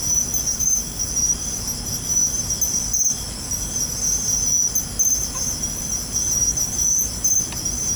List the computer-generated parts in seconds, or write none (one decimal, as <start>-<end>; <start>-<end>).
0.5-1.1